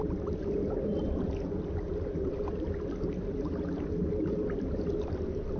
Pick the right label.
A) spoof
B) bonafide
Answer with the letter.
B